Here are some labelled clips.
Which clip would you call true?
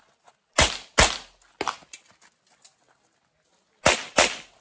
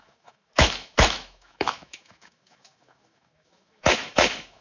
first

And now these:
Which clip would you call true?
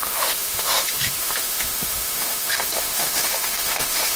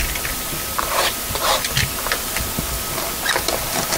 second